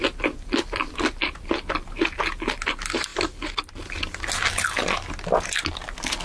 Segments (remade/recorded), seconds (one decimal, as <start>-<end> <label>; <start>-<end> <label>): 0.0-6.2 recorded